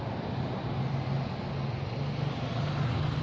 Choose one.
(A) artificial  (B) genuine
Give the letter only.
B